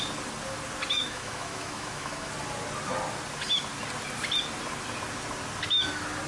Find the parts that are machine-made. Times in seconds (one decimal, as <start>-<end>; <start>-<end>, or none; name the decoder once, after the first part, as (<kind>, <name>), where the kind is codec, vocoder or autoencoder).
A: 1.0-2.3 (autoencoder, DAC-VAE)